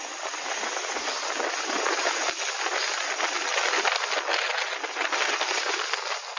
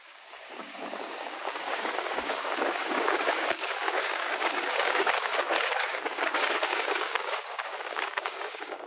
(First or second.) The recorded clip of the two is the first